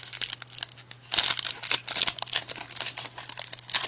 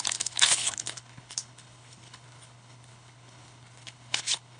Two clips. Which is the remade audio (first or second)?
second